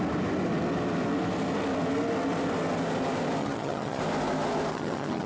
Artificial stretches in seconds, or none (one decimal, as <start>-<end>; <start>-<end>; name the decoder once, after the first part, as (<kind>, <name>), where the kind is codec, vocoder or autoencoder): 3.4-4.0 (vocoder, HiFi-GAN); 4.7-5.3